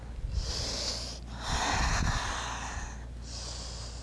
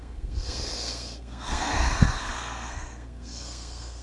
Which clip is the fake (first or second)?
second